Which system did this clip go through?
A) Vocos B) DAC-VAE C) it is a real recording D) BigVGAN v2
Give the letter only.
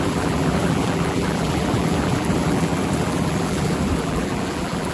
D